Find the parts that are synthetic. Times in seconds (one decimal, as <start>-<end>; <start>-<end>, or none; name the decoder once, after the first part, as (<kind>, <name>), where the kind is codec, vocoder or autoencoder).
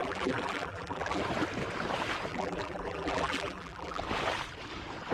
0.0-1.2 (vocoder, BigVGAN v2); 2.3-4.0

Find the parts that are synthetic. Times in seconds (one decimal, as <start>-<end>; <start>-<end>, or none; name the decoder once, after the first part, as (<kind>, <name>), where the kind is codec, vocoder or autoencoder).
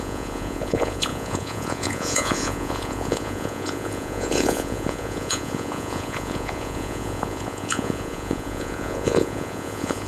0.0-10.1 (vocoder, Vocos)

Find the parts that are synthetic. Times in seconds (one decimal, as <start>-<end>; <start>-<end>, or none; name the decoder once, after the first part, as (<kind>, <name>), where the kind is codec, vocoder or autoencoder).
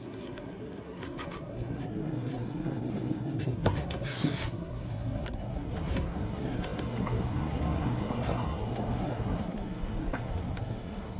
0.0-11.2 (codec, SNAC)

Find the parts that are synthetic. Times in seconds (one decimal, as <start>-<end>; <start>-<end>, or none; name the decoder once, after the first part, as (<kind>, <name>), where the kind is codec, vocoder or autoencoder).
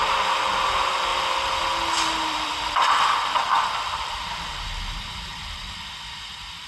1.1-4.6 (vocoder, BigVGAN v2); 5.3-6.1